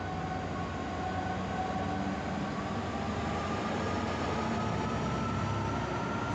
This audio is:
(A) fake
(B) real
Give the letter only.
B